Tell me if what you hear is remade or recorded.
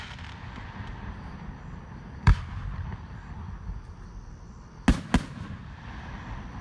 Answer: recorded